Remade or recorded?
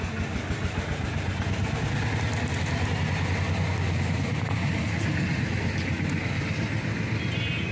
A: recorded